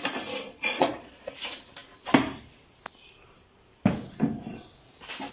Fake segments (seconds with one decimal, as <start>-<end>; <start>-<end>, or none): 0.5-1.3